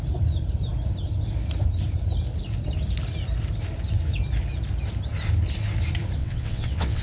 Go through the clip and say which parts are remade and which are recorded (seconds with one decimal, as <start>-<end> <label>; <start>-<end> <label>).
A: 0.0-6.2 recorded; 6.2-7.0 remade